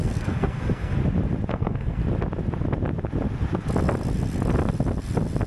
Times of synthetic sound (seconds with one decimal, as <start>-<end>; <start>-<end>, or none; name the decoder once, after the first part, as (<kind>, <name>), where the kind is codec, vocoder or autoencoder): 0.0-1.0 (codec, SNAC); 1.5-2.0